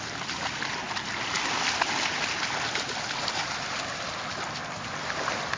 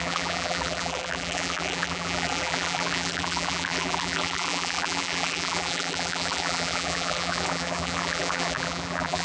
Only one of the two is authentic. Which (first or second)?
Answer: first